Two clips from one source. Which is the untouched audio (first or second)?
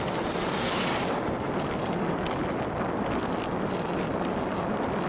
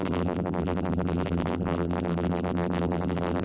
first